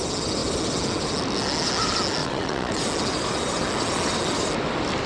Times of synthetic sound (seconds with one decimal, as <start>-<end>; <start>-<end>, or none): 2.2-2.8